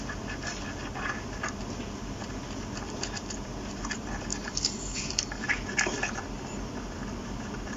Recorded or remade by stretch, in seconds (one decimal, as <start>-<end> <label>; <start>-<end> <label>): 0.0-4.3 recorded; 4.3-5.4 remade; 5.4-7.8 recorded